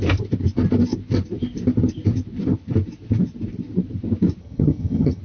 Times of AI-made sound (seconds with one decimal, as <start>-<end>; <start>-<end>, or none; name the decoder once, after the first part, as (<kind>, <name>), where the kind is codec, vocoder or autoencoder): 4.4-5.2 (vocoder, HiFi-GAN)